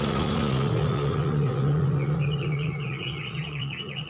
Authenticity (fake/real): fake